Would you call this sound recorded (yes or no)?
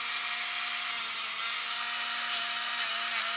yes